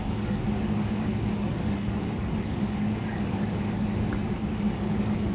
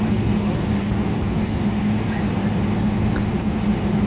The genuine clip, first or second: second